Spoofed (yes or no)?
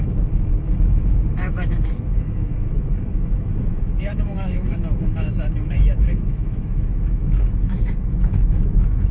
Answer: yes